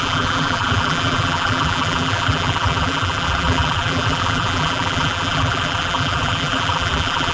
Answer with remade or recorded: remade